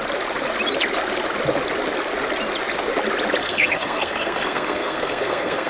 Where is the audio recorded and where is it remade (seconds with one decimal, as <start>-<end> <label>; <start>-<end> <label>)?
0.0-3.4 recorded; 3.4-5.7 remade